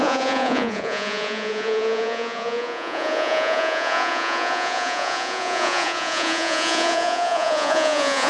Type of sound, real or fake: fake